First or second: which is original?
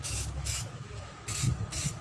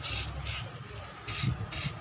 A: second